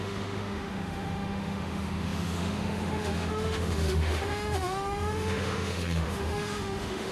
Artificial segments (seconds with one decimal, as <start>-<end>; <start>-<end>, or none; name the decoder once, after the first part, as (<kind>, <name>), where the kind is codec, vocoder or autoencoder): 0.0-7.1 (autoencoder, DAC-VAE)